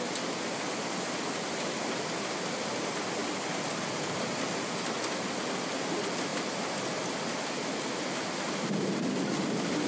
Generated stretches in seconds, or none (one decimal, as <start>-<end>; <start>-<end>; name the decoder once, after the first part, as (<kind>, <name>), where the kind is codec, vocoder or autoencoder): none